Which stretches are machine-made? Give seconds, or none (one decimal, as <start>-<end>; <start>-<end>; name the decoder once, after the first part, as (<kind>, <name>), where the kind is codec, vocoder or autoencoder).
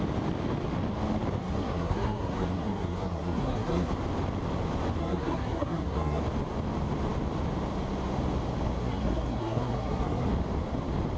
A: 1.4-3.9 (codec, SNAC); 5.0-6.2; 8.8-10.3